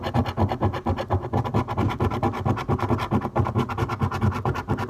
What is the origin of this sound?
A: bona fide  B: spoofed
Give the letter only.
A